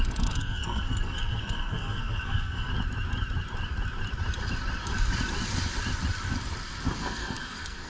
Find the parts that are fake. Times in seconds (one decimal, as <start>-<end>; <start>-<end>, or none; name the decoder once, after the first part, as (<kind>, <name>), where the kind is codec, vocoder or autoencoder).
0.0-2.7 (codec, SNAC); 7.0-7.9